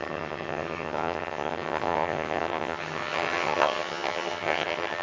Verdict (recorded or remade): remade